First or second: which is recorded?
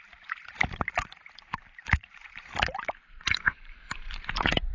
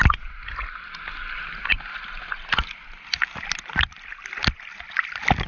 second